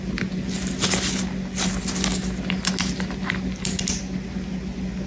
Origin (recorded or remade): recorded